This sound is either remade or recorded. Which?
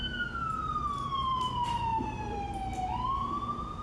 recorded